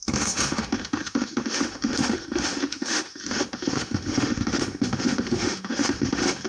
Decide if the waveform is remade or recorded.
remade